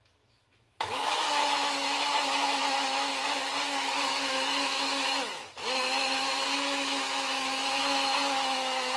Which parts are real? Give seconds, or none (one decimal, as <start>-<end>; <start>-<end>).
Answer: none